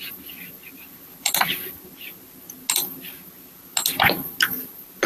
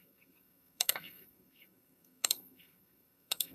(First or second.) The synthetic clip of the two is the second